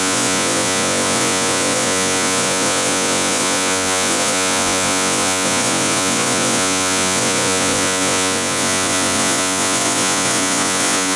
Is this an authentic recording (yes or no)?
no